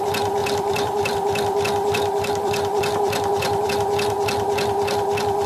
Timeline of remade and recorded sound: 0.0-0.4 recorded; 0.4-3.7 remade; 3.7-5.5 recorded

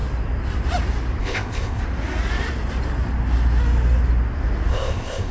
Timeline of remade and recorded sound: 0.0-1.2 recorded; 1.2-1.8 remade; 1.8-4.7 recorded; 4.7-5.3 remade

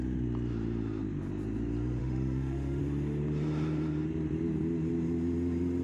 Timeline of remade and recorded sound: 0.0-2.0 recorded; 2.0-2.8 remade; 2.8-5.8 recorded

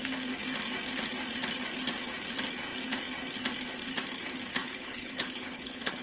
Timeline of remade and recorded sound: 0.0-4.6 recorded; 4.6-6.0 remade

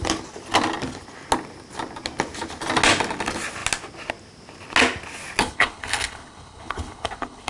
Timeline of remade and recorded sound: 0.0-5.4 recorded; 5.4-7.5 remade

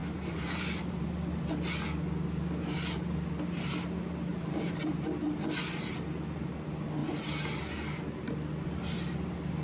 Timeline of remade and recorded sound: 0.0-1.5 remade; 1.5-4.3 recorded; 4.3-4.8 remade; 4.8-9.6 recorded

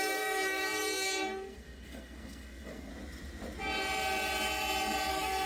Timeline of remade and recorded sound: 0.0-2.9 remade; 2.9-5.1 recorded; 5.1-5.5 remade

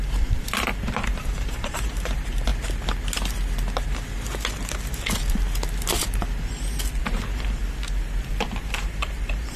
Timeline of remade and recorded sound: 0.0-2.5 remade; 2.5-5.8 recorded; 5.8-6.2 remade; 6.2-7.0 recorded; 7.0-7.6 remade; 7.6-8.6 recorded; 8.6-9.6 remade